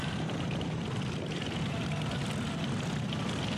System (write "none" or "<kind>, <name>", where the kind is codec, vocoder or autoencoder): vocoder, BigVGAN v2